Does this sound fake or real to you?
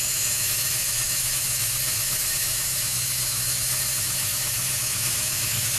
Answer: fake